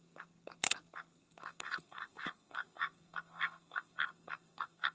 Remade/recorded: remade